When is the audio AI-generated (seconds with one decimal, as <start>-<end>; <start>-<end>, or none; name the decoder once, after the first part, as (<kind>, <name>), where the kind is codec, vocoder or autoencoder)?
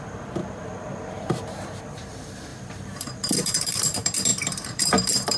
0.0-5.4 (vocoder, BigVGAN v2)